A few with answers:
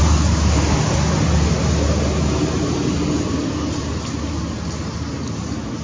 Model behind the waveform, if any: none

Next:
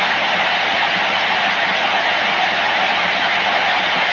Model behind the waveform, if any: none